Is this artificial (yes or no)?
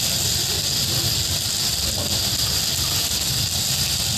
no